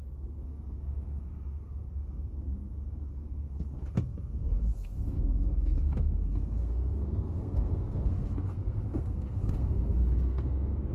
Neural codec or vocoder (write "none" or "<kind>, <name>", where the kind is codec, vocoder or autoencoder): codec, SNAC